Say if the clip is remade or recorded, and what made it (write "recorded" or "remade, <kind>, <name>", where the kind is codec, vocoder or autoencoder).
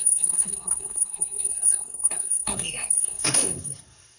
remade, codec, SNAC